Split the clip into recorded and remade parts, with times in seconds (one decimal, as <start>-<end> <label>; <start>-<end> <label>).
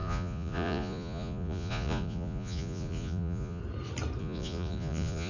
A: 0.0-3.6 remade; 3.6-4.2 recorded; 4.2-5.3 remade